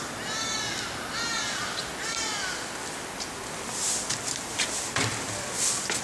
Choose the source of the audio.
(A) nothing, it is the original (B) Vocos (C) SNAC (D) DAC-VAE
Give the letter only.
A